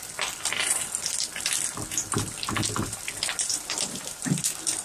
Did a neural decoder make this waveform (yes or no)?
yes